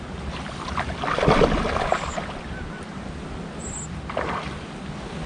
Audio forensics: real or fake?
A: real